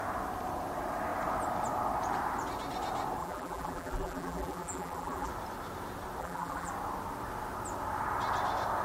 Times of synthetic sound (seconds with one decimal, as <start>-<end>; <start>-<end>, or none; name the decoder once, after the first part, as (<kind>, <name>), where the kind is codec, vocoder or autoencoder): 3.2-5.3 (vocoder, BigVGAN v2); 6.2-6.7

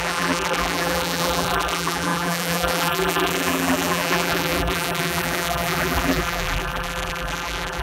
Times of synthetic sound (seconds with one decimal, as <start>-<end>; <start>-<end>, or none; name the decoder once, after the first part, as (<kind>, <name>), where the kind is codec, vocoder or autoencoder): 0.0-7.8 (vocoder, BigVGAN v2)